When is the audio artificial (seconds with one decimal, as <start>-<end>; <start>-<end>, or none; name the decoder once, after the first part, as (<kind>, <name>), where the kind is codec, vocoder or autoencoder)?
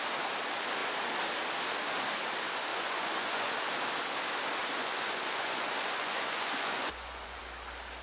2.7-3.5 (vocoder, Vocos); 4.8-7.4